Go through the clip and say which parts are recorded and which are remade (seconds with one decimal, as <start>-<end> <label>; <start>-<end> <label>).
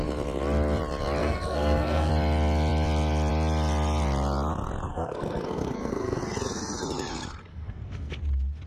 0.0-1.2 recorded; 1.2-2.1 remade; 2.1-4.9 recorded; 4.9-6.2 remade; 6.2-7.5 recorded; 7.5-8.1 remade; 8.1-8.7 recorded